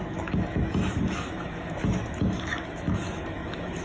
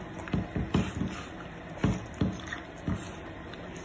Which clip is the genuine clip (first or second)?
second